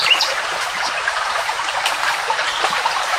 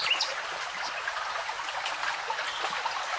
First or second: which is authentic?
second